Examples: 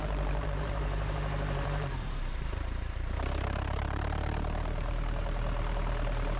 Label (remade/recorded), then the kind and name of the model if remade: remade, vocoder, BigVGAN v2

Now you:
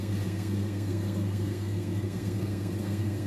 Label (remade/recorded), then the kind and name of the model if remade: remade, codec, SNAC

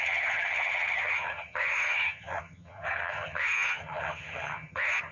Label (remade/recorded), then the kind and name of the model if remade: remade, vocoder, HiFi-GAN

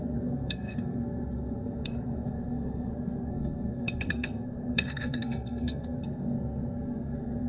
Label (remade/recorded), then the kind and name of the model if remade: remade, codec, SNAC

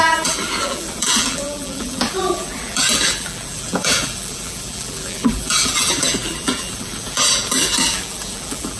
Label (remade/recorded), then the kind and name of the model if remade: remade, vocoder, BigVGAN v2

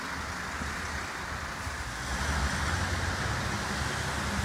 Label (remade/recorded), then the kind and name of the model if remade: recorded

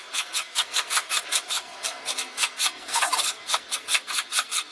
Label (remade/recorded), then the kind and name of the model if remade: remade, codec, SNAC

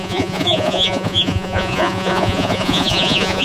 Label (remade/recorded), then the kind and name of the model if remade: remade, vocoder, Vocos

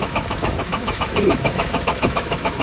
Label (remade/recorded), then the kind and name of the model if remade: remade, autoencoder, DAC-VAE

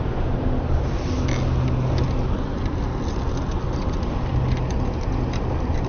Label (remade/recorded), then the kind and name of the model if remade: recorded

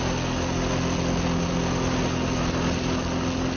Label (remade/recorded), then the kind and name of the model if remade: recorded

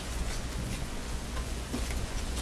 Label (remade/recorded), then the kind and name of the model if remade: remade, vocoder, Vocos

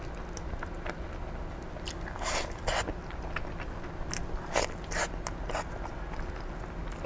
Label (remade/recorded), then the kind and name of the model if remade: recorded